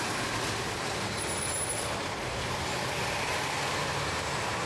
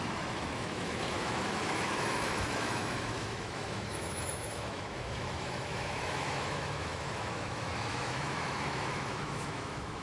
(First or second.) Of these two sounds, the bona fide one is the first